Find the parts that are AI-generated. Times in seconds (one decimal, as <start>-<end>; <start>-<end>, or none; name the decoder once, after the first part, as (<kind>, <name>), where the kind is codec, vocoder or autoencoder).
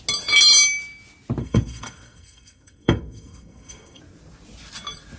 1.4-4.0 (codec, SNAC)